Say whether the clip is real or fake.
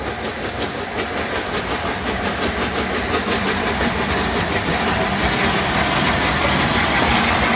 real